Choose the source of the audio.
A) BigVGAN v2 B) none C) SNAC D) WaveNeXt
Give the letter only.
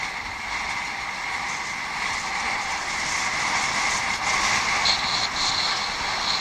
B